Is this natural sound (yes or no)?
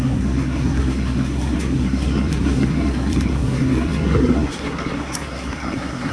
no